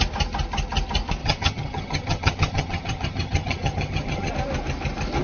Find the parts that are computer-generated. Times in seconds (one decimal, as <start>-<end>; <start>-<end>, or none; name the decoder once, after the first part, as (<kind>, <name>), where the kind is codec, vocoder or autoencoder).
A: 1.2-4.3 (vocoder, HiFi-GAN)